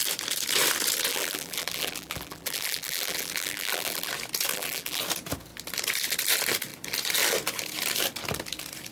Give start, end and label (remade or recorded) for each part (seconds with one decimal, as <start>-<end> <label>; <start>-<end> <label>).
0.0-1.1 recorded; 1.1-4.1 remade; 4.1-4.5 recorded; 4.5-5.0 remade; 5.0-8.9 recorded

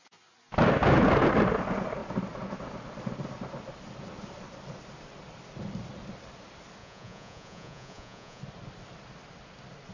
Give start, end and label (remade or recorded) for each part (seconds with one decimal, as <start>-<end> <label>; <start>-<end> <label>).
0.0-6.8 recorded; 6.8-8.4 remade; 8.4-9.9 recorded

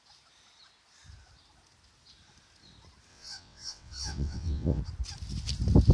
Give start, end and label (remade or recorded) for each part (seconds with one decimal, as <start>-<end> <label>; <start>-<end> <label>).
0.0-3.1 recorded; 3.1-4.8 remade; 4.8-5.9 recorded

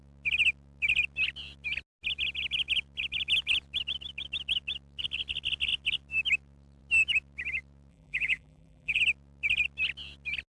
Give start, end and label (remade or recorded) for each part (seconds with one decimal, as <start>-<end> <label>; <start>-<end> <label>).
0.0-7.9 recorded; 7.9-9.0 remade; 9.0-10.5 recorded